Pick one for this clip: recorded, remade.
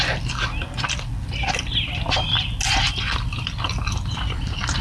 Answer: recorded